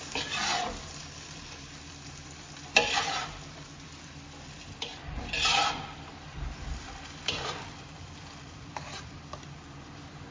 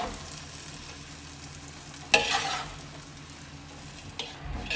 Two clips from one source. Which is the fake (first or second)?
first